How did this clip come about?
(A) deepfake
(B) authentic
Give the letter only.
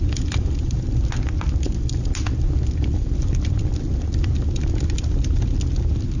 B